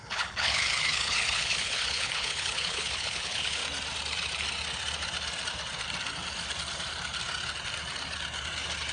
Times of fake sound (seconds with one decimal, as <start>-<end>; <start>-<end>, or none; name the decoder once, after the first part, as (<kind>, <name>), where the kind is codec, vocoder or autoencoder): 0.0-3.6 (codec, HILCodec)